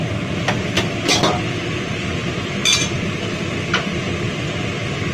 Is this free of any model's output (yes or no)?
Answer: yes